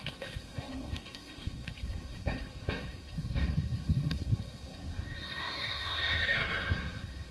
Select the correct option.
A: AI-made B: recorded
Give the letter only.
A